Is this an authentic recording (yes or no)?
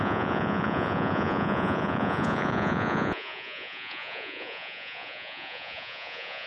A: no